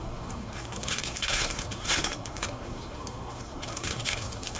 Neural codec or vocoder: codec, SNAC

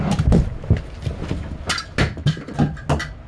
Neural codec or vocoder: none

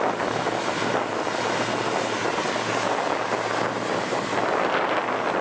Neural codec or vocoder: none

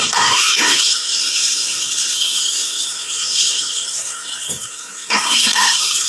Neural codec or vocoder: codec, SNAC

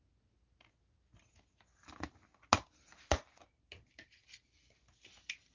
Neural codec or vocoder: none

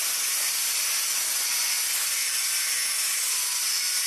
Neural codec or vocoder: vocoder, BigVGAN v2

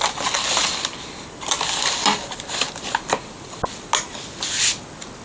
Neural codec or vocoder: none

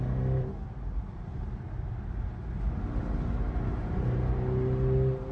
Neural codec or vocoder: none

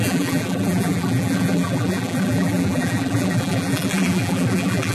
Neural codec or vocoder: vocoder, BigVGAN v2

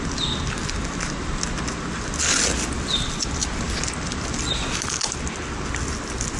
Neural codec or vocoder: none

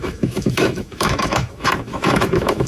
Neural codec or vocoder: autoencoder, DAC-VAE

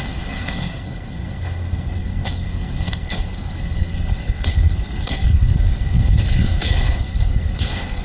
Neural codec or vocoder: codec, SNAC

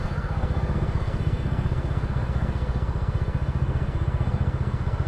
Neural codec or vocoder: codec, SNAC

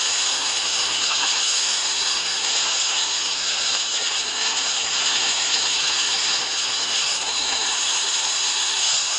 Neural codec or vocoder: codec, SNAC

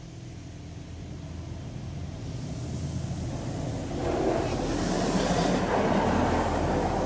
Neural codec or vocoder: none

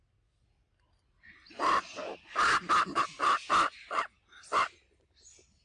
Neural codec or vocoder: none